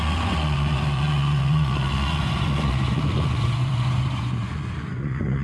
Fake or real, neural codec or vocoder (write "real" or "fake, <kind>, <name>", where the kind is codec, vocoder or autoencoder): fake, vocoder, Vocos